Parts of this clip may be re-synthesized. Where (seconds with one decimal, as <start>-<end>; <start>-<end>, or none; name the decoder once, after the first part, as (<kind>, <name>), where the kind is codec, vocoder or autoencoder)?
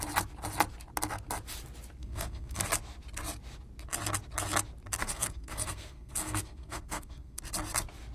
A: 2.0-2.6 (codec, SNAC); 5.0-7.4